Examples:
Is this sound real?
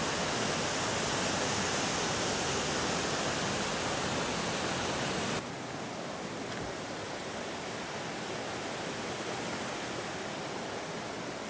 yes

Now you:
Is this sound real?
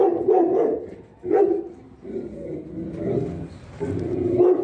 yes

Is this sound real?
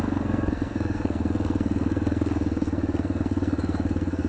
no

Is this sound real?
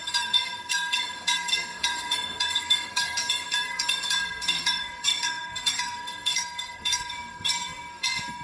no